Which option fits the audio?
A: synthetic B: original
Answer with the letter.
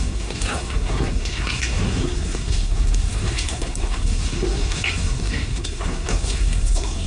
A